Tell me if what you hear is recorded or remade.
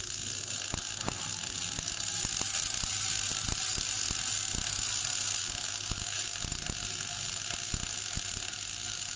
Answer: recorded